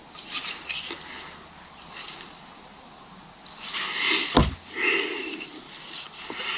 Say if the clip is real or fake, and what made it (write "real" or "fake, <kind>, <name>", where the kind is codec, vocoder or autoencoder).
real